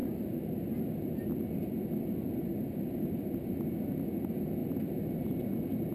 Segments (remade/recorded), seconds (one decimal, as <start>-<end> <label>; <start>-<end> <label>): 0.0-5.9 recorded